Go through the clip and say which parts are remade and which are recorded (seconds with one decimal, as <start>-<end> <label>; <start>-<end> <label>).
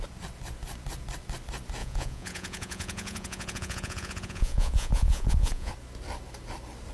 0.0-1.8 recorded; 1.8-5.7 remade; 5.7-6.9 recorded